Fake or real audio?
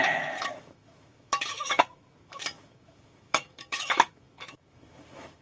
fake